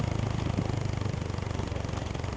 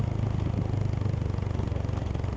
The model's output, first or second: first